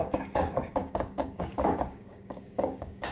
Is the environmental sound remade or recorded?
remade